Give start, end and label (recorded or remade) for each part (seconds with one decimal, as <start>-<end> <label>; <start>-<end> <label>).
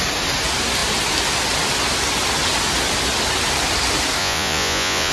0.0-4.2 recorded; 4.2-5.1 remade